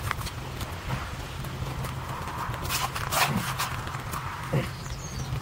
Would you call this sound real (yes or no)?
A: yes